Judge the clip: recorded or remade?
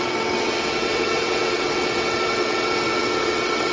remade